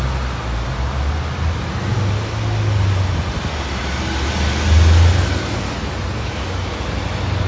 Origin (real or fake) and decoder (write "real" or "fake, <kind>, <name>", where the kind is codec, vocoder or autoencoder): real